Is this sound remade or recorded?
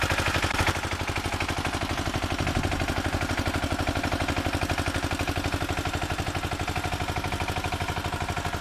recorded